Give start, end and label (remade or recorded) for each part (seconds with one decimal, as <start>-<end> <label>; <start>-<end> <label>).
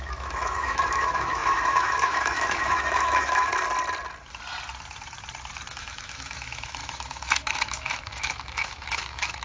0.0-3.5 remade; 3.5-5.7 recorded; 5.7-9.4 remade